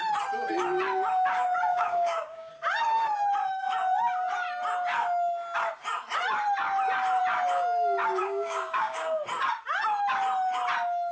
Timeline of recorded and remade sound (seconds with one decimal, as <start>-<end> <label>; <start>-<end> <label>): 0.0-1.7 recorded; 1.7-2.5 remade; 2.5-8.2 recorded; 8.2-9.2 remade; 9.2-11.1 recorded